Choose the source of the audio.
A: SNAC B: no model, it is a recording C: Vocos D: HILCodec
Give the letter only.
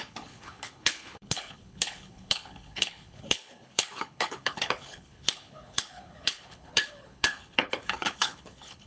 D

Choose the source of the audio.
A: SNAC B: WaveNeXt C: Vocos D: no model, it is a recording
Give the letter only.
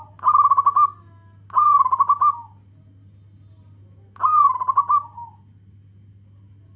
D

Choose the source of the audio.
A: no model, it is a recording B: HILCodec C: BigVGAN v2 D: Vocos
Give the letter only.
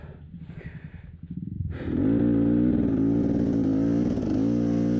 A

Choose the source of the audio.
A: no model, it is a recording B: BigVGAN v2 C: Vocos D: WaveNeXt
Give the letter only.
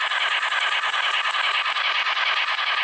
A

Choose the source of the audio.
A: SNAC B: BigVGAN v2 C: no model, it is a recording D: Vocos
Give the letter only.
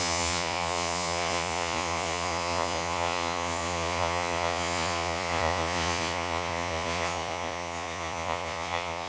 D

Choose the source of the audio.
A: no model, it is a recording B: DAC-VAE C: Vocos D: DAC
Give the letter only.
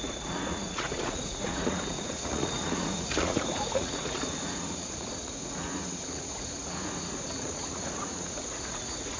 C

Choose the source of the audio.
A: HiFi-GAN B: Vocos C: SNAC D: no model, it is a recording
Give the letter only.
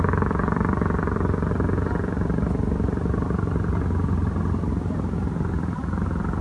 D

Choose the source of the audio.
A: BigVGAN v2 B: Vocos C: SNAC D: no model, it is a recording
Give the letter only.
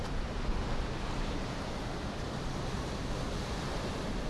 D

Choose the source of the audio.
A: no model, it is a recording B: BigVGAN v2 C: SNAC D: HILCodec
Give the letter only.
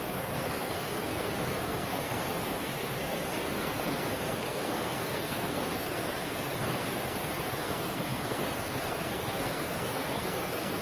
C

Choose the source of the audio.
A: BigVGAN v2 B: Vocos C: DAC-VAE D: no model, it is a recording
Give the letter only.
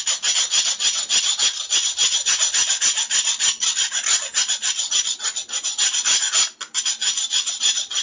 D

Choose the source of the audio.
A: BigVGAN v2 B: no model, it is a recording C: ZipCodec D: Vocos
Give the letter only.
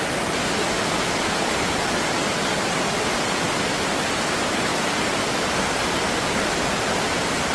B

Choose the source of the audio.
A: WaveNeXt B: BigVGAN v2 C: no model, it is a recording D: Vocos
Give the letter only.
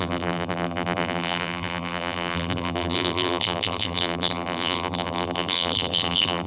B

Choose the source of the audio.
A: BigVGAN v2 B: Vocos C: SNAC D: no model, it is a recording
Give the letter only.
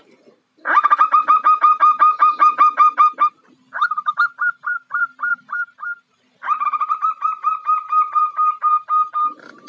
A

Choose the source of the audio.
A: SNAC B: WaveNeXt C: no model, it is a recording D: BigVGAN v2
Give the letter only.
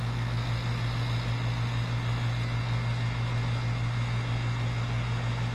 C